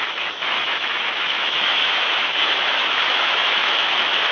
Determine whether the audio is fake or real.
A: fake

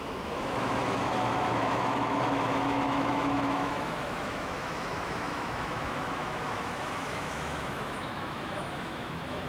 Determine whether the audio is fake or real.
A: fake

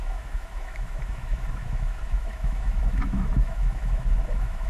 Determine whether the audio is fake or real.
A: fake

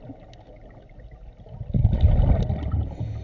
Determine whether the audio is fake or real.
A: real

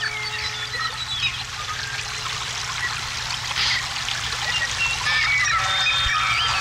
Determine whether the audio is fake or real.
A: real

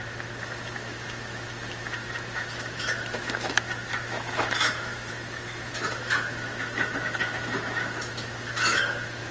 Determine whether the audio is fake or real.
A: fake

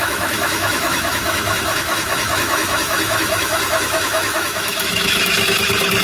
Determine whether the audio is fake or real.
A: fake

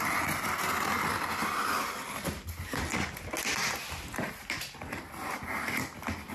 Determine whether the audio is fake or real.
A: real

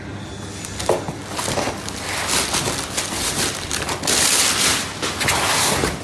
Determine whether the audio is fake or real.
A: real